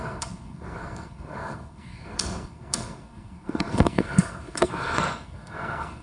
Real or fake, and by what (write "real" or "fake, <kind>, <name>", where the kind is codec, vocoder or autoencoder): fake, codec, SNAC